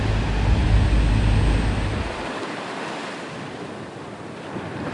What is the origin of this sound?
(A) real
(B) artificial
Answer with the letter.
A